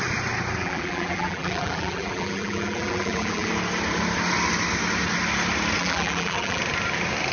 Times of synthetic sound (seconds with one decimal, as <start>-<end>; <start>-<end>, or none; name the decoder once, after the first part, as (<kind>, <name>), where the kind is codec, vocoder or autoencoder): 0.6-3.5 (vocoder, BigVGAN v2); 5.8-6.6

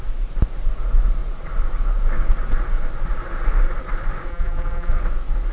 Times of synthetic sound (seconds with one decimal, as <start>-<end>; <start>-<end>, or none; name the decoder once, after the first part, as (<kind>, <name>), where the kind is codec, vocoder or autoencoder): 4.3-5.0 (vocoder, BigVGAN v2)

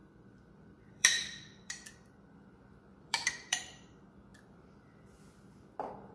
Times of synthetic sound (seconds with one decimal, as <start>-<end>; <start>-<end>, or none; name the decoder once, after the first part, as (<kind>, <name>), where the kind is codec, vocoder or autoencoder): 0.0-2.5 (vocoder, BigVGAN v2); 2.9-3.6

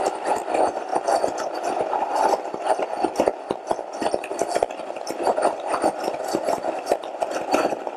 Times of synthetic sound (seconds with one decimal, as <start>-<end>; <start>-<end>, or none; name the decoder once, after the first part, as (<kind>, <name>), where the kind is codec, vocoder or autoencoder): 0.0-0.9 (vocoder, BigVGAN v2); 3.8-5.3; 6.2-8.0

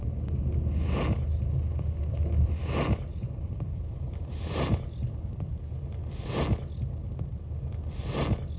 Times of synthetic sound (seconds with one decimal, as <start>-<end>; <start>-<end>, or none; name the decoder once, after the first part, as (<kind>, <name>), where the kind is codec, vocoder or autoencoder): 3.1-5.5 (vocoder, BigVGAN v2)

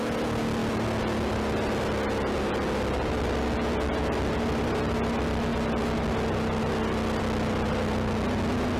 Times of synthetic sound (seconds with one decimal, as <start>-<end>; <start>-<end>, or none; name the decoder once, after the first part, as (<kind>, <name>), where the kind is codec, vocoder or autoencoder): none

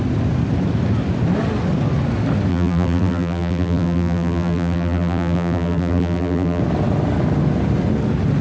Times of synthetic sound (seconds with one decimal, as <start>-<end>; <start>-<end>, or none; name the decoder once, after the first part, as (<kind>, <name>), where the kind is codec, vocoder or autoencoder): 2.5-6.6 (vocoder, BigVGAN v2)